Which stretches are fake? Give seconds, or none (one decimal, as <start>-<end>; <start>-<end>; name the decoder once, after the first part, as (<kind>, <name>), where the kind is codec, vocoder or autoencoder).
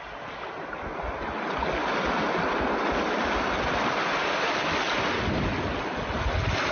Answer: none